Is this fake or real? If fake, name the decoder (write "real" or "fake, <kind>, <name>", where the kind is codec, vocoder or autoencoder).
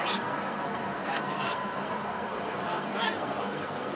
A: fake, codec, SNAC